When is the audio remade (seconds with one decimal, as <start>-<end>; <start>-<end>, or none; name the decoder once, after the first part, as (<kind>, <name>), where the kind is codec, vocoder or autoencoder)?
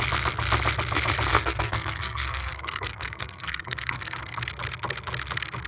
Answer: 1.3-4.4 (codec, SNAC)